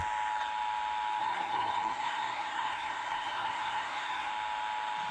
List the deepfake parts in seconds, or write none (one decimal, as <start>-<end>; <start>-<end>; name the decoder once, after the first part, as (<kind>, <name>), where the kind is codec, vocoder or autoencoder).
1.2-4.3 (codec, SNAC)